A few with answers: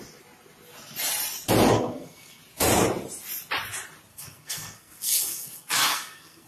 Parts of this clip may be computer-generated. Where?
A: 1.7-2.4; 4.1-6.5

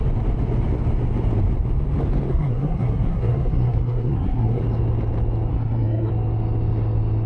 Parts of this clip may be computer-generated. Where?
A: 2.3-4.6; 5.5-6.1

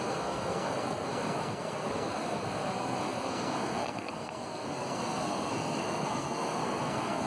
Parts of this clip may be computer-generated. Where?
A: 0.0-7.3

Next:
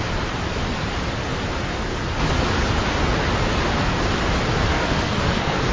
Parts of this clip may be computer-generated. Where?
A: 4.7-5.7

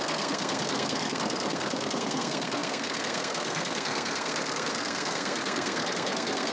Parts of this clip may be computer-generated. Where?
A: 0.0-6.5